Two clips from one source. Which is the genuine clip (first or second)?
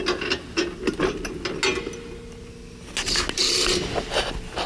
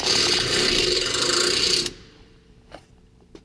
first